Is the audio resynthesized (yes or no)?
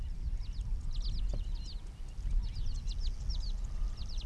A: no